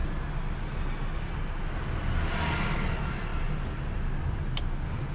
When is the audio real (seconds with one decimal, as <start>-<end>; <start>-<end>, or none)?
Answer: 0.0-5.1